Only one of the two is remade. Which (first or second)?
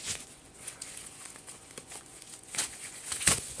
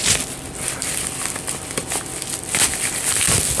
first